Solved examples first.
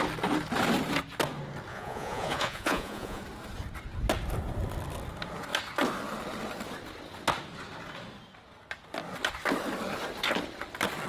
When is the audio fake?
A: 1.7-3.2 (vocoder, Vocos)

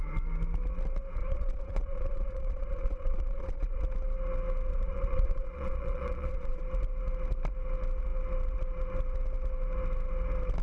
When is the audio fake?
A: 1.2-3.8 (vocoder, Vocos); 4.7-6.6

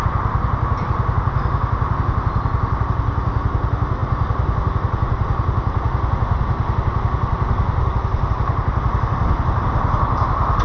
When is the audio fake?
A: none

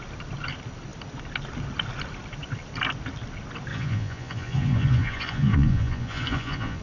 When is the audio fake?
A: 3.7-6.8 (vocoder, Vocos)